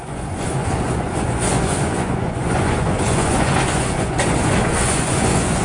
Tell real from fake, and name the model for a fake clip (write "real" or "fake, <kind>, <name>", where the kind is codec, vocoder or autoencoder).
fake, vocoder, Vocos